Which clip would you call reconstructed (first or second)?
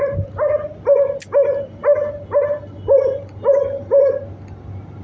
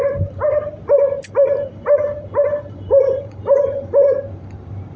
second